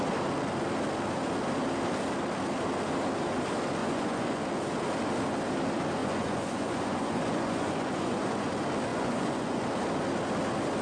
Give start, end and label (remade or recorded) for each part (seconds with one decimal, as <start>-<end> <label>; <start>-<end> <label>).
0.0-3.8 recorded; 3.8-4.4 remade; 4.4-6.0 recorded; 6.0-8.5 remade; 8.5-8.9 recorded; 8.9-9.6 remade; 9.6-10.8 recorded